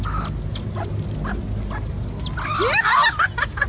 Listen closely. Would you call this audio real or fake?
real